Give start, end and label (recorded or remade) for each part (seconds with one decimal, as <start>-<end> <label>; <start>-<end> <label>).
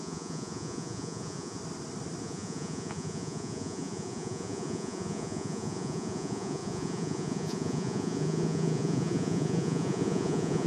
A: 0.0-1.6 remade; 1.6-2.2 recorded; 2.2-10.7 remade